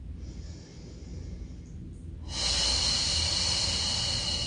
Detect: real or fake real